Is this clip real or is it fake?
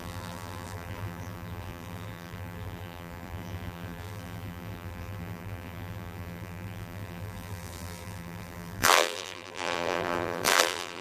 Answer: fake